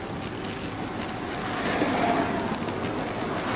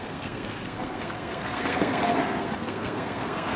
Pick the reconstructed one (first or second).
second